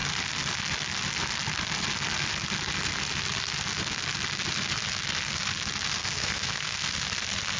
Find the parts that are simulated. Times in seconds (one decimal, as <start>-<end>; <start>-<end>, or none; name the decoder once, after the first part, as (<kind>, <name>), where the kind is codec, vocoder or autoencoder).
5.9-6.9 (codec, SNAC)